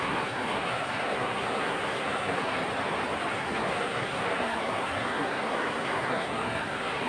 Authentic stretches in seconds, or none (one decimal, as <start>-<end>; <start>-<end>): 2.6-3.3

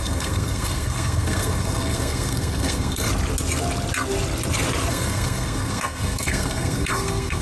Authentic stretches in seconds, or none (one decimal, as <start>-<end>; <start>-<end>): 3.1-4.9

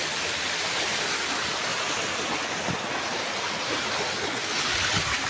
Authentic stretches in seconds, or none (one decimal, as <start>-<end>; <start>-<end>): 0.0-5.3

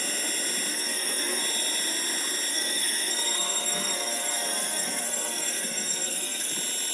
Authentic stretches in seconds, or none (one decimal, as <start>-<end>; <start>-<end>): 0.0-0.7; 1.4-2.5; 6.5-6.9

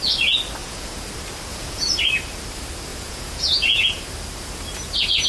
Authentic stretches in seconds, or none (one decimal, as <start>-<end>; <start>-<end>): 0.0-0.6; 1.1-1.5; 2.0-2.9; 4.0-5.3

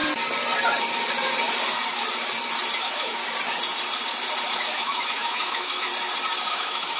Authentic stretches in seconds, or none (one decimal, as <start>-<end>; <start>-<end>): 0.0-2.8; 3.2-4.6; 5.9-6.5

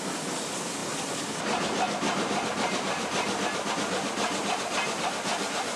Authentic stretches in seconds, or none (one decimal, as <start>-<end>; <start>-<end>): 0.0-5.8